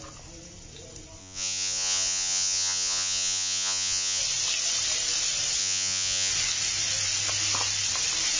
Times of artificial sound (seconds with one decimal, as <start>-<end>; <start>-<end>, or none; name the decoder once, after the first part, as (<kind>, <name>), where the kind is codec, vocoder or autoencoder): 1.2-4.2 (vocoder, Vocos); 5.6-6.3